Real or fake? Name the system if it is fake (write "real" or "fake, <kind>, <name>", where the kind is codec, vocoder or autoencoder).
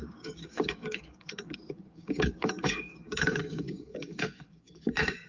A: fake, codec, DAC